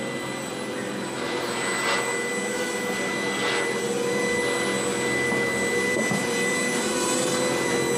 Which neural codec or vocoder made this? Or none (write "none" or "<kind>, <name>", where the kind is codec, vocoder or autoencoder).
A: none